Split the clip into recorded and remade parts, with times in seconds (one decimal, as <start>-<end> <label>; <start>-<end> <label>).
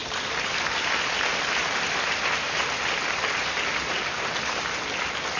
0.0-5.4 recorded